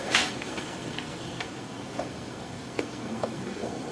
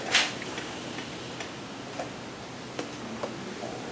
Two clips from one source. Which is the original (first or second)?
second